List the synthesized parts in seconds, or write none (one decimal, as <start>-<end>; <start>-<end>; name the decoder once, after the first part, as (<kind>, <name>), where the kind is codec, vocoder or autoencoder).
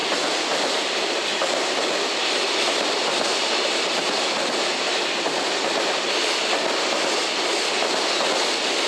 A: 0.0-1.6 (vocoder, BigVGAN v2)